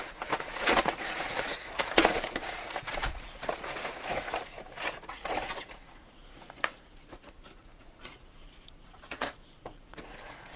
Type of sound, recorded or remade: remade